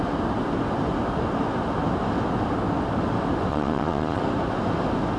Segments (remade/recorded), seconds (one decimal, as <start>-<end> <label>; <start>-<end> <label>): 0.0-3.5 recorded; 3.5-4.2 remade; 4.2-5.2 recorded